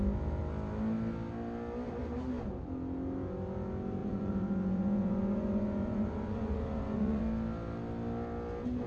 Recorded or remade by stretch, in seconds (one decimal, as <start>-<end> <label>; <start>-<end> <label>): 0.0-4.0 recorded; 4.0-7.2 remade; 7.2-8.9 recorded